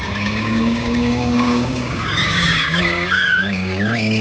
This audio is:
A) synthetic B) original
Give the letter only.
A